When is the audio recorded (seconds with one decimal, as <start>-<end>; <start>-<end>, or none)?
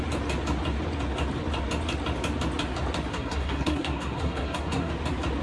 0.0-3.1; 4.9-5.4